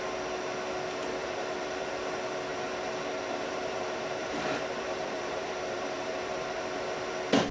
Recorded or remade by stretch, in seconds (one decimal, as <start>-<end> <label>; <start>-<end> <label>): 0.0-1.2 recorded; 1.2-1.9 remade; 1.9-2.5 recorded; 2.5-6.6 remade; 6.6-7.5 recorded